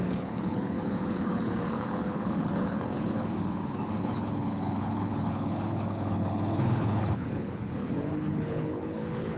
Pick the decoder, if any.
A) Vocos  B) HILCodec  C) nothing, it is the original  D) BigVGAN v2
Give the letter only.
B